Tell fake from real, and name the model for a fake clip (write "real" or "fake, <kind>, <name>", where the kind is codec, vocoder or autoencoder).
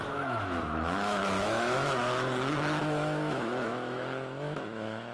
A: fake, autoencoder, DAC-VAE